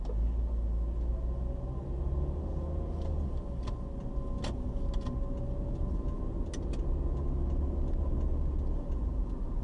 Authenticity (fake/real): real